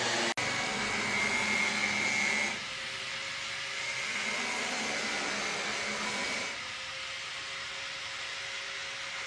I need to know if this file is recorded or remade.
recorded